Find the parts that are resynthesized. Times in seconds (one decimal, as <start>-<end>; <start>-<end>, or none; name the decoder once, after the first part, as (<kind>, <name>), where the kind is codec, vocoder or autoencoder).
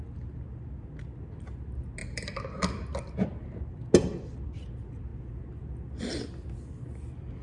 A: 2.0-3.7 (vocoder, BigVGAN v2)